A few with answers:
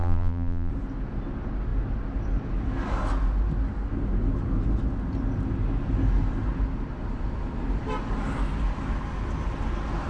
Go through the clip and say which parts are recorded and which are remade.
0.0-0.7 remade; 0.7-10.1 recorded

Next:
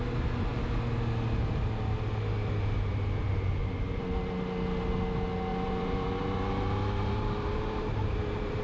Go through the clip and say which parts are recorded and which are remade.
0.0-5.5 recorded; 5.5-8.6 remade

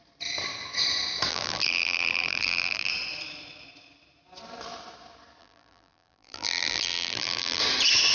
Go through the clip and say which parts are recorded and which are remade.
0.0-1.3 recorded; 1.3-2.9 remade; 2.9-5.4 recorded; 5.4-7.6 remade; 7.6-8.1 recorded

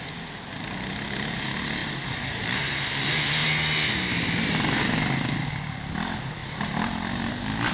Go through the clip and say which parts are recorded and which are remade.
0.0-7.7 recorded